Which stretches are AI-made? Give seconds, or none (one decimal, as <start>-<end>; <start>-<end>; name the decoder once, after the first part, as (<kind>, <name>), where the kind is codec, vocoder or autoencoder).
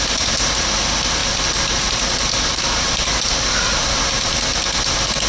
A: none